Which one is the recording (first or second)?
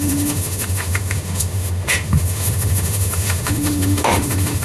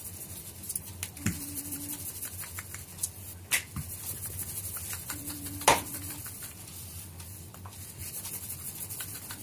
second